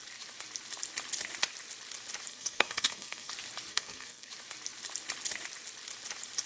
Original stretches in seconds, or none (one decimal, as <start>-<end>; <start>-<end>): 0.0-2.3; 3.3-3.7; 4.3-6.5